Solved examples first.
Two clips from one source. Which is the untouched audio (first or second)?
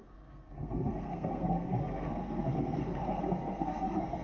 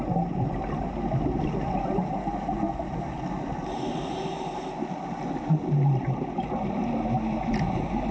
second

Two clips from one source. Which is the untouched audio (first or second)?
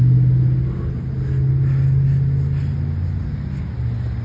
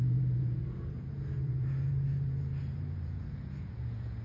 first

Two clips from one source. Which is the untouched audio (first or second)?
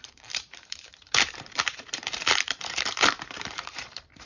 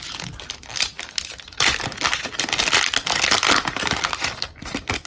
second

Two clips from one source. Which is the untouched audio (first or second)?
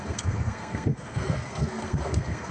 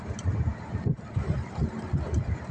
second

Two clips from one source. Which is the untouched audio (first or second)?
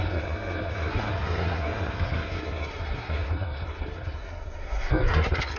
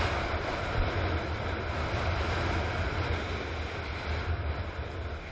second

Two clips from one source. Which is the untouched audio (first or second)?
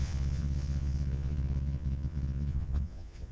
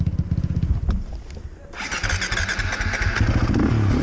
second